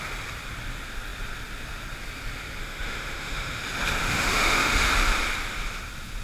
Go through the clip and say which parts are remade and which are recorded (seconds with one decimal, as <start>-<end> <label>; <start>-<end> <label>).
0.0-2.6 recorded; 2.6-3.6 remade; 3.6-4.0 recorded; 4.0-4.9 remade; 4.9-6.2 recorded